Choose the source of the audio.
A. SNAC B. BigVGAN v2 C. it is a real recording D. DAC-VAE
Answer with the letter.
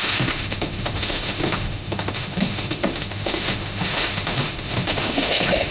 D